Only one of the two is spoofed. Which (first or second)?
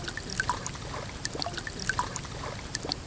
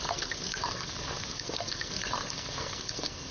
second